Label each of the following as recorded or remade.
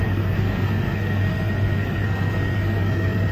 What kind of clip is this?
remade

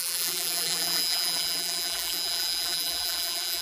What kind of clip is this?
remade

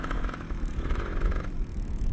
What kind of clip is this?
remade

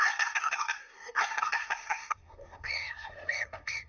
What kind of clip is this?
remade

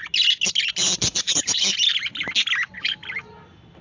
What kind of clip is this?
recorded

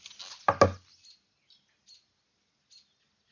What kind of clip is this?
recorded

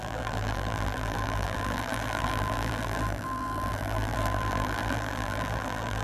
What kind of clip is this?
remade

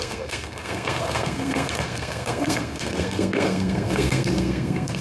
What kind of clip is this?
remade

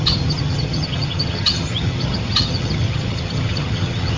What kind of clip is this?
remade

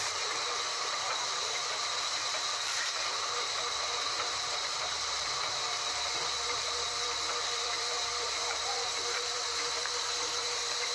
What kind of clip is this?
remade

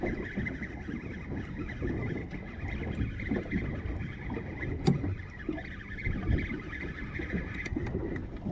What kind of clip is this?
recorded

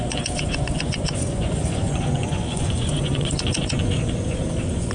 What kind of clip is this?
remade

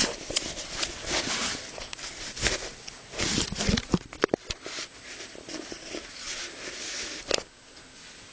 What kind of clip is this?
recorded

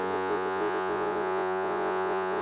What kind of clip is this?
remade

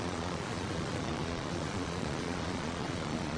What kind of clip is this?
remade